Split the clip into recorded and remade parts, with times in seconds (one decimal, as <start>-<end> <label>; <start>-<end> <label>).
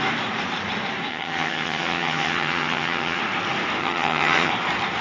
0.0-1.1 recorded; 1.1-3.2 remade; 3.2-3.8 recorded; 3.8-4.5 remade; 4.5-5.0 recorded